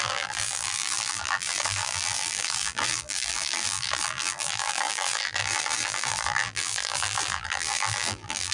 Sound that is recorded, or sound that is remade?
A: remade